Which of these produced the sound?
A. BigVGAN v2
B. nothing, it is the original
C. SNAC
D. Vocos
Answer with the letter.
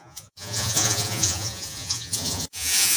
D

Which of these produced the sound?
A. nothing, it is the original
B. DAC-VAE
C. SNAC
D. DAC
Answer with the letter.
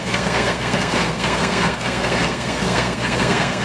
C